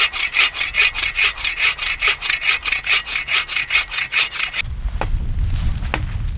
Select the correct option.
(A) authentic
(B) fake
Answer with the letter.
A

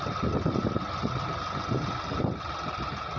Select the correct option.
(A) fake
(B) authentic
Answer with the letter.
B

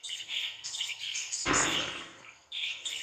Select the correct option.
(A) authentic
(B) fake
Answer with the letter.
B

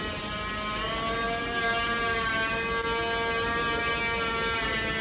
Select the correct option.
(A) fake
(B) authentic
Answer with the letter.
B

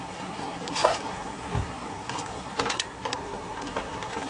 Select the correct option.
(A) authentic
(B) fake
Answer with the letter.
B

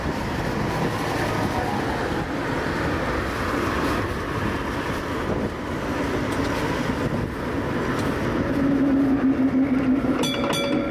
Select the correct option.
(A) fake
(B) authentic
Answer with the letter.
B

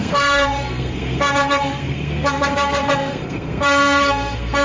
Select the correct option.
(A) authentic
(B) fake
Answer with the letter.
B